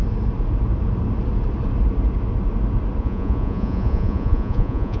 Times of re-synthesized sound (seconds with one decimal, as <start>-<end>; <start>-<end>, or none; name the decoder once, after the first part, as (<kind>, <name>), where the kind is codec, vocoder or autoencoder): 3.0-5.0 (vocoder, Vocos)